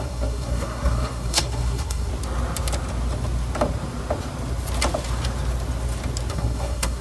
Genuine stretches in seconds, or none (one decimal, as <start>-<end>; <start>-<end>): 2.1-6.3

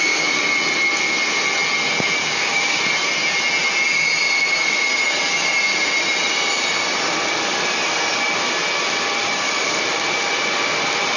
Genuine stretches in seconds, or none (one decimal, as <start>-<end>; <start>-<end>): 0.0-2.2; 2.8-11.2

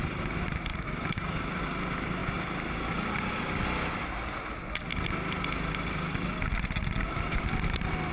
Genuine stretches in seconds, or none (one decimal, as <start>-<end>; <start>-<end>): 0.0-0.7; 1.6-8.1